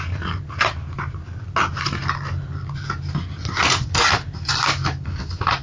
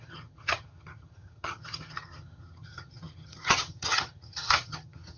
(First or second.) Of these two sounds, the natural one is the first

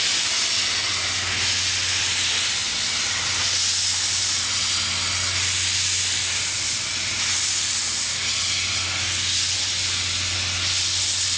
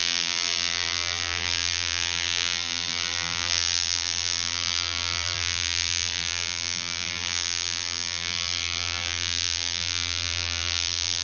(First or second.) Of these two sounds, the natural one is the first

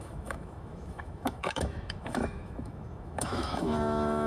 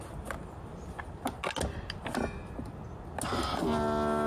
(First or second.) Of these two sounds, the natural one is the second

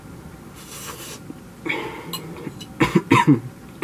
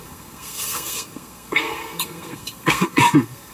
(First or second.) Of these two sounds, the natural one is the first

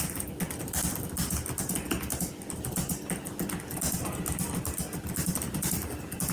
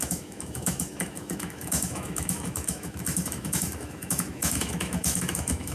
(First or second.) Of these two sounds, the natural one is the first